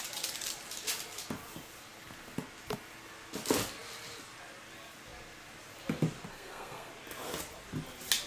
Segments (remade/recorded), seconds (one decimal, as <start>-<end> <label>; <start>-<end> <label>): 0.0-6.3 recorded; 6.3-6.9 remade; 6.9-8.3 recorded